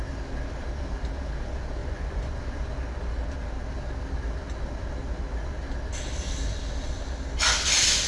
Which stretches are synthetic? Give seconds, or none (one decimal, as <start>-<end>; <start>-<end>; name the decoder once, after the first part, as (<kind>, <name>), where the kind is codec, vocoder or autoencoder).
1.8-2.4 (vocoder, Vocos)